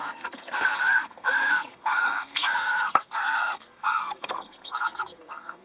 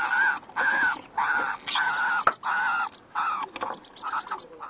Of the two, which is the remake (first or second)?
first